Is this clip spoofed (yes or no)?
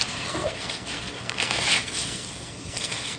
yes